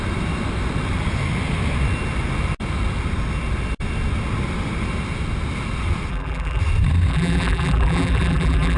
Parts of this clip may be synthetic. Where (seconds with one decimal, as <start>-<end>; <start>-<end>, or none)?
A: 6.1-6.6; 7.1-8.8